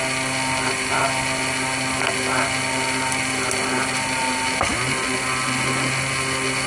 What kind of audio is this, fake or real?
real